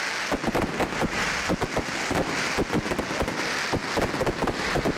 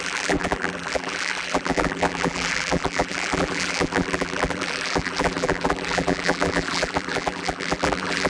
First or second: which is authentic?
first